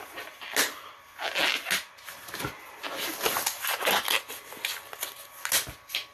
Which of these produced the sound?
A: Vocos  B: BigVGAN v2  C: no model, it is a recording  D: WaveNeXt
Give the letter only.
C